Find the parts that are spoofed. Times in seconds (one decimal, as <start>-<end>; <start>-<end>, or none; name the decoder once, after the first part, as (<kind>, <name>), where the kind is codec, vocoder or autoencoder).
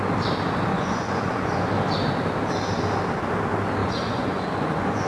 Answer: 0.7-1.6 (vocoder, Vocos); 3.8-5.1